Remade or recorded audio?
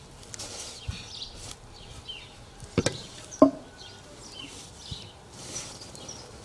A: recorded